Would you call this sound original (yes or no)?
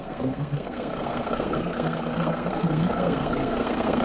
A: no